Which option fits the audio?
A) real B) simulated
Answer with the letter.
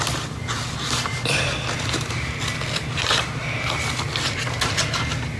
A